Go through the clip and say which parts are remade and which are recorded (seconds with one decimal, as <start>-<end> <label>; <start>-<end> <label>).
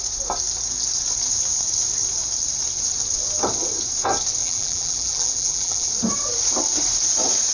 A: 0.0-4.4 recorded; 4.4-5.9 remade; 5.9-7.5 recorded